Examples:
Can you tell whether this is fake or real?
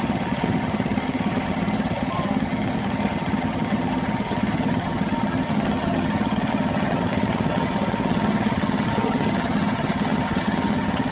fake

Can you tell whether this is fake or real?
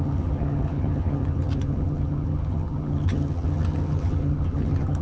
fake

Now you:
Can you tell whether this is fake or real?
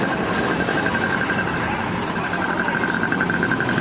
real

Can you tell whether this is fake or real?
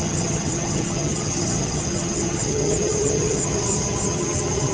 fake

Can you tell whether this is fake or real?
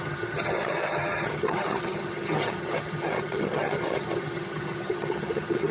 fake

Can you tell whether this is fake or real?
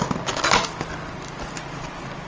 real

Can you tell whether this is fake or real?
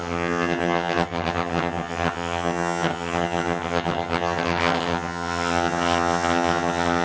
fake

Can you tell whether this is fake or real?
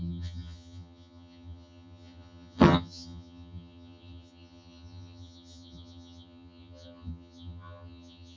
fake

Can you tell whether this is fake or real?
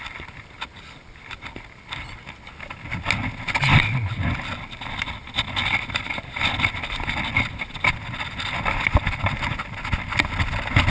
real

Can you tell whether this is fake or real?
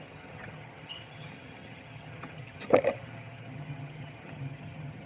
fake